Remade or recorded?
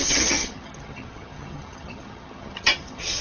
remade